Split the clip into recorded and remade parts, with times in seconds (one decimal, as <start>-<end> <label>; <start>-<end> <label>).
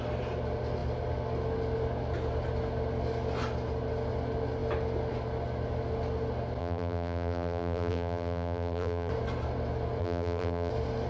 0.0-6.6 recorded; 6.6-9.1 remade; 9.1-10.0 recorded; 10.0-10.7 remade; 10.7-11.1 recorded